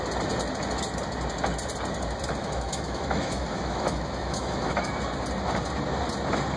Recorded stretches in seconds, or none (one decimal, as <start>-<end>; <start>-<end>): 0.0-2.4; 4.9-6.6